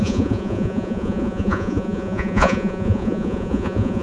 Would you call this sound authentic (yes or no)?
no